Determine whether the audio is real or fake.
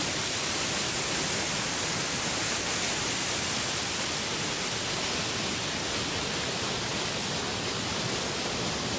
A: real